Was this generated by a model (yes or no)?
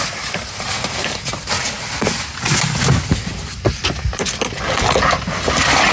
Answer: no